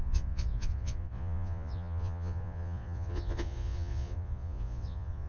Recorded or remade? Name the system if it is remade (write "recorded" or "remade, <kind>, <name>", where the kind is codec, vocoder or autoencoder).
remade, vocoder, Vocos